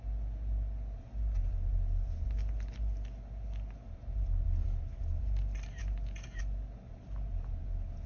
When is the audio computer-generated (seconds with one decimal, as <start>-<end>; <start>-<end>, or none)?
5.8-6.4